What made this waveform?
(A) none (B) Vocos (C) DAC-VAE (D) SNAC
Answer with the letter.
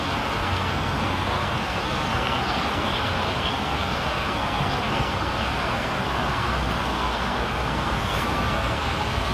D